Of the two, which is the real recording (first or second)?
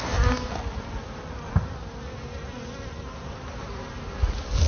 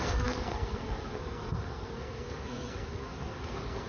first